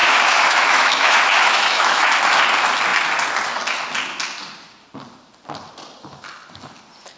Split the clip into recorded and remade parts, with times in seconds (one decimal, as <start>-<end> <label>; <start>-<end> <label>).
0.0-2.1 remade; 2.1-7.2 recorded